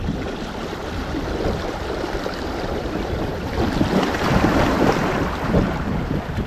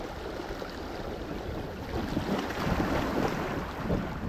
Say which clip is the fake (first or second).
first